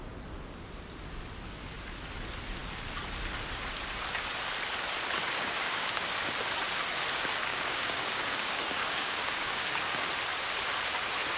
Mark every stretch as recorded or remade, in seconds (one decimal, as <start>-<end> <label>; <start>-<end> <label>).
0.0-5.2 recorded; 5.2-6.1 remade; 6.1-7.5 recorded; 7.5-10.1 remade; 10.1-11.4 recorded